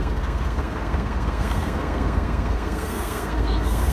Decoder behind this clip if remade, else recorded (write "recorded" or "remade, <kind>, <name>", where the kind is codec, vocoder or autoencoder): remade, codec, SNAC